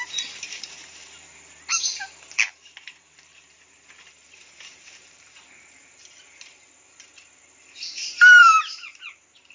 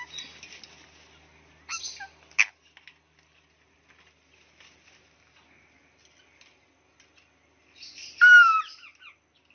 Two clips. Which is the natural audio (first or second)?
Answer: second